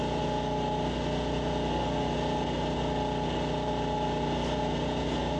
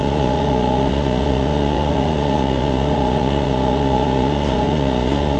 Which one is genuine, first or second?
first